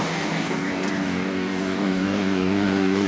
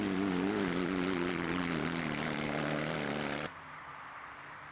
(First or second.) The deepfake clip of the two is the first